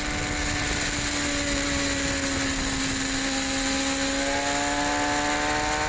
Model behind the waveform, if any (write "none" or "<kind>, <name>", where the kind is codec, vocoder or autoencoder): none